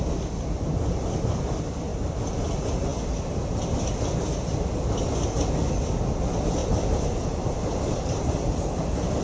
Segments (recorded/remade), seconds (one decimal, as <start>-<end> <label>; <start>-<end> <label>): 0.0-2.9 recorded; 2.9-3.4 remade; 3.4-6.6 recorded; 6.6-8.3 remade; 8.3-9.2 recorded